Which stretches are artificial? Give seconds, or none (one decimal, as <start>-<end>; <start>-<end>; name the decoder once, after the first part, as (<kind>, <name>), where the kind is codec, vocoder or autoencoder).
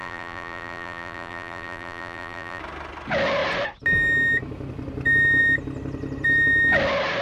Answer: 0.0-2.6 (vocoder, BigVGAN v2)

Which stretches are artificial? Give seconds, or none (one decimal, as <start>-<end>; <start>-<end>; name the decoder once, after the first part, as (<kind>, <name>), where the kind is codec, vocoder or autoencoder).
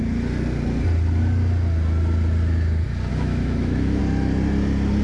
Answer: 3.1-4.0 (autoencoder, DAC-VAE)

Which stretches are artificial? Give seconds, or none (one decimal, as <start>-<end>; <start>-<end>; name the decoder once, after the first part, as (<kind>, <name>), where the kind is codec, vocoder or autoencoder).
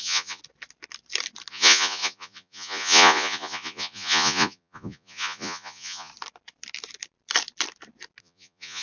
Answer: 0.0-0.4 (vocoder, Vocos); 1.5-6.1; 8.2-8.8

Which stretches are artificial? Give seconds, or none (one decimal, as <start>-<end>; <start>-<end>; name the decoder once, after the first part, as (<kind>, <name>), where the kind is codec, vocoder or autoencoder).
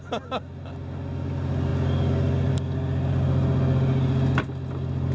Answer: none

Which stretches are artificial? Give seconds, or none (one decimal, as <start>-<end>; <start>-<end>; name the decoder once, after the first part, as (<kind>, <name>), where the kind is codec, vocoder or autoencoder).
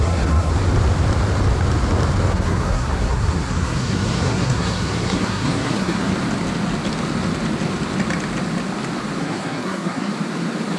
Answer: 0.0-0.5 (codec, SNAC); 2.3-6.1; 9.2-10.1